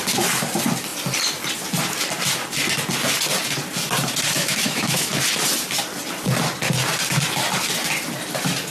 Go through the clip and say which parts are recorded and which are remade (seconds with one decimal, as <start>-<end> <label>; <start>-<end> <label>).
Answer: 0.0-4.4 recorded; 4.4-5.1 remade; 5.1-8.7 recorded